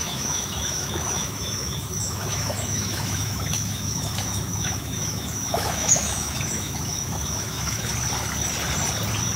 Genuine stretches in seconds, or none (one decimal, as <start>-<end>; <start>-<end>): 7.9-9.4